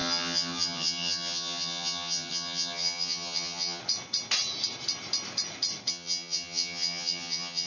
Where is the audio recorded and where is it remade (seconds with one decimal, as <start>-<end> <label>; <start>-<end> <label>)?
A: 0.0-3.8 remade; 3.8-5.9 recorded; 5.9-7.7 remade